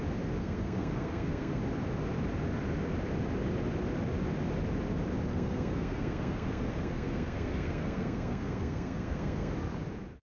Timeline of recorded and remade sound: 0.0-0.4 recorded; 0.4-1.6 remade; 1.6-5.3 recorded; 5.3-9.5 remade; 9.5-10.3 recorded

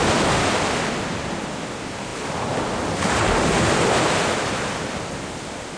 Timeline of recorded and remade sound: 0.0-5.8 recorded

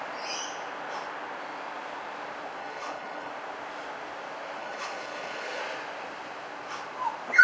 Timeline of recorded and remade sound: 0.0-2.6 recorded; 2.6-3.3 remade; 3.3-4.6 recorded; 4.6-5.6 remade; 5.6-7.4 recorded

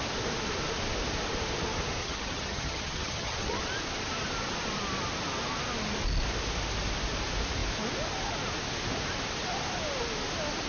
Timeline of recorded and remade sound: 0.0-2.0 recorded; 2.0-3.6 remade; 3.6-10.7 recorded